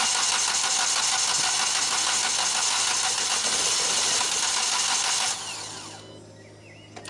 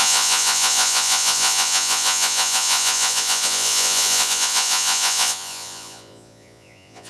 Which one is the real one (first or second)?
first